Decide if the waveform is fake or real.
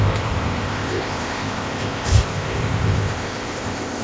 fake